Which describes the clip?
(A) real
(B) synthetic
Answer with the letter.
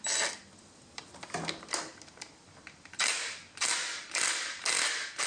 A